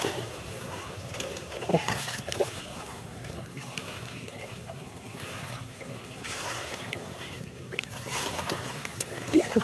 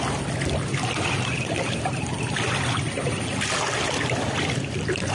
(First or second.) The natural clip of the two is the second